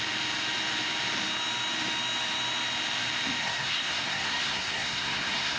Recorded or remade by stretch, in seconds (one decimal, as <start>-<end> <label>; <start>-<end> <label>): 0.0-3.4 recorded; 3.4-5.6 remade